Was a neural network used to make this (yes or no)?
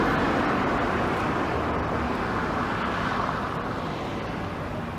no